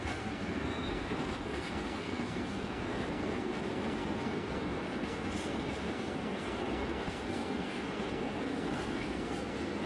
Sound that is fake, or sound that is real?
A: fake